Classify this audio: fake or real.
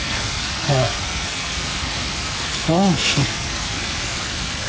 fake